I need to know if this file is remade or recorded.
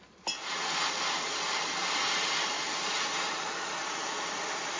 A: remade